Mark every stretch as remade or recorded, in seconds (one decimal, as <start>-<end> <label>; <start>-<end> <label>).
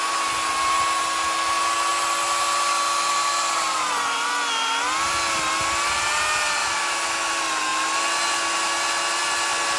0.0-6.6 recorded; 6.6-7.3 remade; 7.3-9.8 recorded